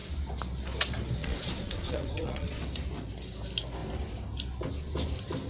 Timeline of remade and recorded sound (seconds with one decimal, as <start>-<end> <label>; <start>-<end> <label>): 0.0-1.2 recorded; 1.2-2.6 remade; 2.6-5.5 recorded